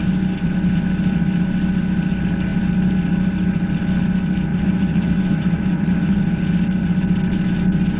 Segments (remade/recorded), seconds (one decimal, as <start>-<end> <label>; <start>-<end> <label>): 0.0-4.5 recorded; 4.5-6.2 remade; 6.2-8.0 recorded